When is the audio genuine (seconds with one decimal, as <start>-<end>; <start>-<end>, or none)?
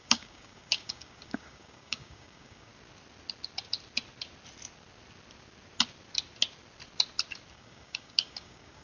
2.7-7.5